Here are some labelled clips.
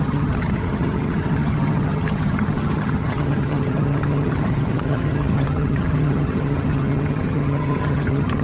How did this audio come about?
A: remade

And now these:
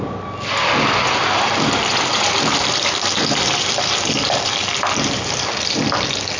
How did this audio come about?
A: recorded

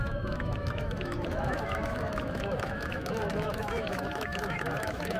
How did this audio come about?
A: remade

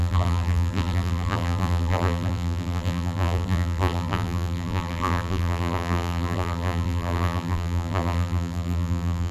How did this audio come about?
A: remade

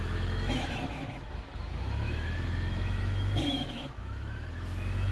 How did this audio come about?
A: remade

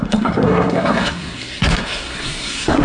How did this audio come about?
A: remade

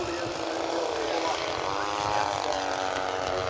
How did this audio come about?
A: recorded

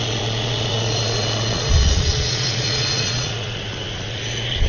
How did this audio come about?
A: remade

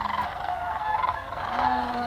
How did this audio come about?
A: remade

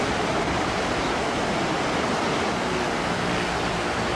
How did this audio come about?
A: recorded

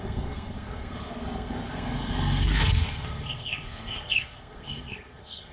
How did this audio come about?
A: remade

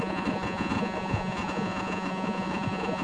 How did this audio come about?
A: remade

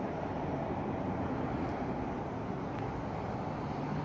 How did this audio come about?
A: recorded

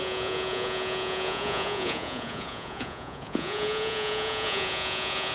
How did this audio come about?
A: remade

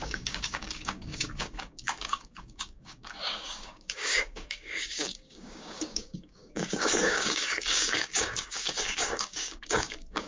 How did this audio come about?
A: remade